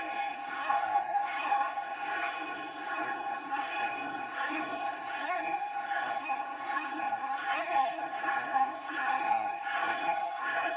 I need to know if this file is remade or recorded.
remade